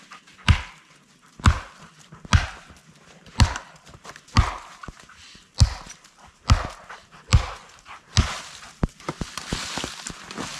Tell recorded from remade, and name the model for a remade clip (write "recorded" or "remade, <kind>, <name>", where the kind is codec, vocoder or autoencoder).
recorded